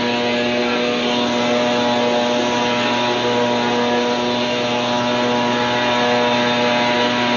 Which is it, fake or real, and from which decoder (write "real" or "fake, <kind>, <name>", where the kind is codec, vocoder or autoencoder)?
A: real